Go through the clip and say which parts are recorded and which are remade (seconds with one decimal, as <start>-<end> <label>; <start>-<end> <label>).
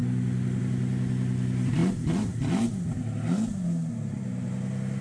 0.0-5.0 recorded